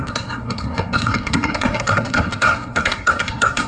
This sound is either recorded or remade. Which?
remade